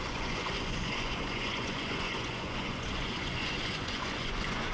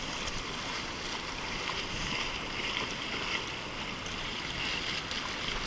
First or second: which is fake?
first